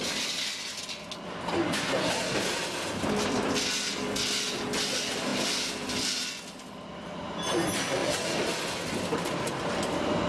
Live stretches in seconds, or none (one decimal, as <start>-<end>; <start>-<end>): 0.0-10.3